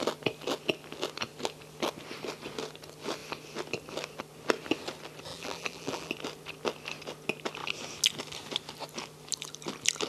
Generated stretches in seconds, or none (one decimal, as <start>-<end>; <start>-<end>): 5.3-6.1